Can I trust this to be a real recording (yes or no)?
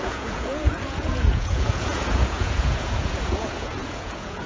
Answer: no